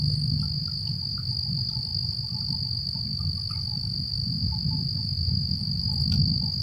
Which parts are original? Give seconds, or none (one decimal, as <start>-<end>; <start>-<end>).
0.0-6.6